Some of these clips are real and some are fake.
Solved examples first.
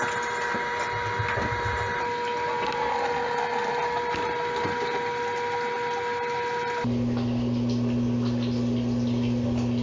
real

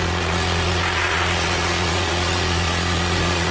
fake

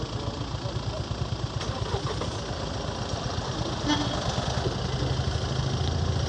real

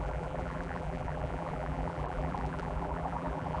fake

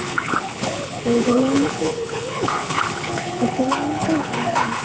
fake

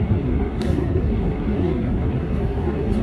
fake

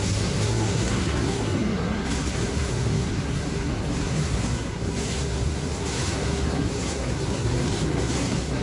fake